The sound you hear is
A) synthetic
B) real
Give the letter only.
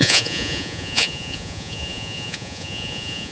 A